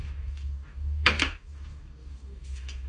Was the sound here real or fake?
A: fake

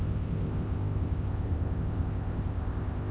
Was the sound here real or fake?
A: fake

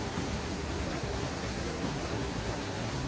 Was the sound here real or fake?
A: fake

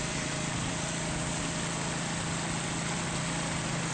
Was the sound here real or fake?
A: real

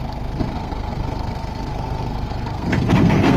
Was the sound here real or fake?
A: fake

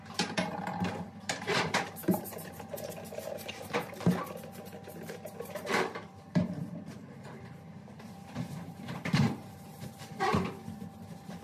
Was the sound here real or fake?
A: fake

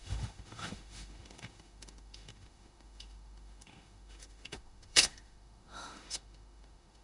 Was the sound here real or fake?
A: fake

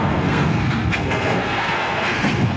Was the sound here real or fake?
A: fake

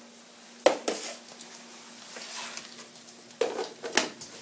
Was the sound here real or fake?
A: real